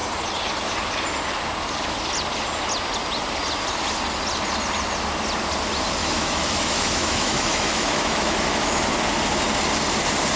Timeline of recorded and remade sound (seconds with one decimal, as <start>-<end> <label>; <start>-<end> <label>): 0.0-6.0 recorded; 6.0-8.8 remade; 8.8-10.4 recorded